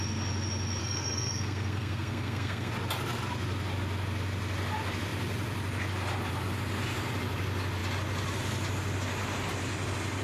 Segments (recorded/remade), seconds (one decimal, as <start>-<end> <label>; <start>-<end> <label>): 0.0-0.8 recorded; 0.8-2.7 remade; 2.7-10.2 recorded